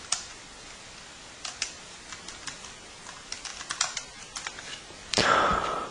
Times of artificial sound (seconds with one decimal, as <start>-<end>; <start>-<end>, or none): none